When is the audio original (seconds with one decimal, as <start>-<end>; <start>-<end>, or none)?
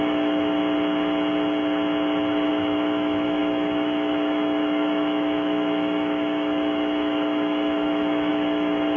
0.6-2.5